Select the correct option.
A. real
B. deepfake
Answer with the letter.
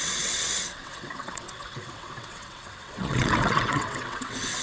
B